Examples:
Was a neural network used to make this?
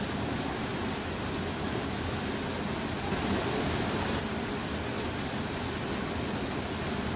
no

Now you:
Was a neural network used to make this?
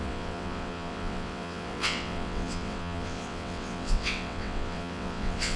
yes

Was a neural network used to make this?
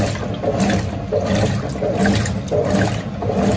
no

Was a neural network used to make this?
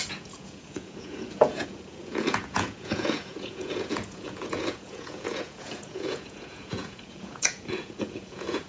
yes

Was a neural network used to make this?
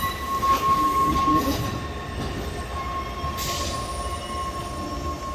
no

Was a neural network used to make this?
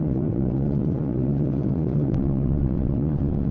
yes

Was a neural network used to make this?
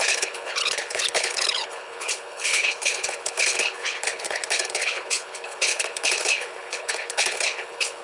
yes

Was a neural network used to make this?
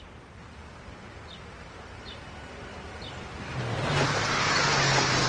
no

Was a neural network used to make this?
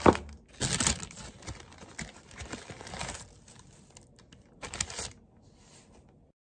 no